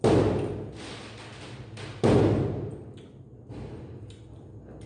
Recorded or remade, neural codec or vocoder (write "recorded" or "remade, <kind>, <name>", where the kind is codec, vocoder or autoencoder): recorded